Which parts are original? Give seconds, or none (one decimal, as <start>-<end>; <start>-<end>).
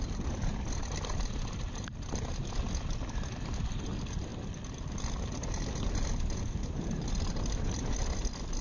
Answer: 0.0-8.6